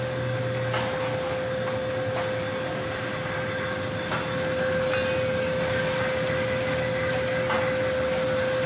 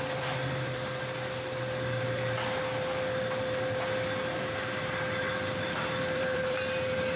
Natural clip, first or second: first